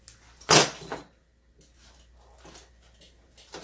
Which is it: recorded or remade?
recorded